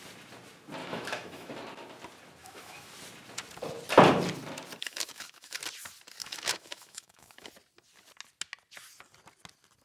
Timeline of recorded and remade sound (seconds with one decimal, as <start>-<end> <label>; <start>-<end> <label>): 0.0-0.8 recorded; 0.8-1.5 remade; 1.5-2.4 recorded; 2.4-2.9 remade; 2.9-4.8 recorded; 4.8-5.6 remade; 5.6-6.2 recorded; 6.2-7.5 remade; 7.5-9.8 recorded